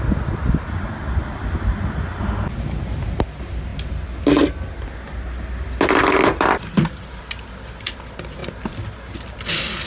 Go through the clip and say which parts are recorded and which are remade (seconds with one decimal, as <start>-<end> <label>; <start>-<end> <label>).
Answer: 0.0-9.9 recorded